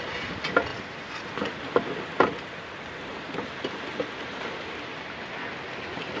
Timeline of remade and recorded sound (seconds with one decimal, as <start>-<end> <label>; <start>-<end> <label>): 0.0-3.1 recorded; 3.1-3.9 remade; 3.9-6.2 recorded